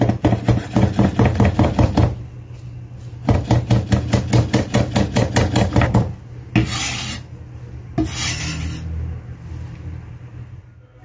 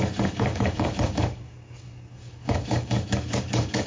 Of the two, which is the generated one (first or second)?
second